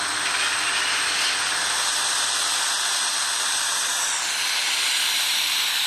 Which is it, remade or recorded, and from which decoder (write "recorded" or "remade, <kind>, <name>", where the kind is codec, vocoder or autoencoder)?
recorded